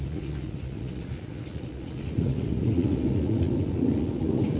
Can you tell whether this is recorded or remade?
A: remade